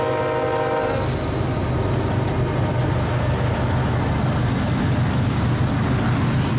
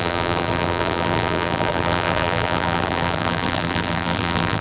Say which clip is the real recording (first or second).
first